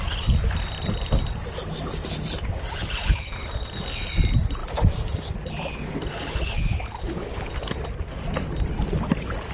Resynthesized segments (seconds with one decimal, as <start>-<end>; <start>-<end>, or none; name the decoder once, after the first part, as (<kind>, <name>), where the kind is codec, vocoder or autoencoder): none